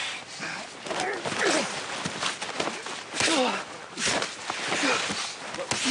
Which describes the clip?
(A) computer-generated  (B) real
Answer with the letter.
B